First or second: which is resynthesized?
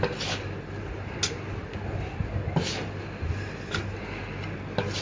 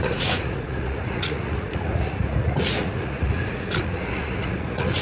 second